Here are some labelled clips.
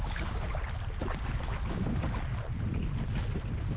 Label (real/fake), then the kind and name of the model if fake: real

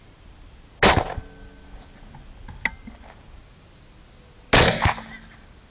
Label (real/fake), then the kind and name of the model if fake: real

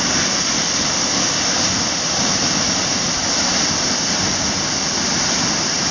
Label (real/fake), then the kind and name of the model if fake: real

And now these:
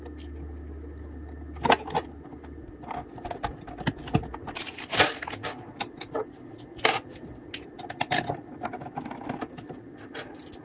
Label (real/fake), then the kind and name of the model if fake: real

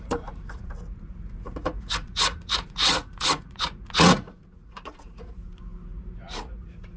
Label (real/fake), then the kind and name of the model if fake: fake, vocoder, Vocos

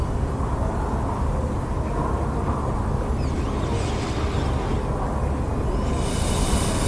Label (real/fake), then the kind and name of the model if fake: real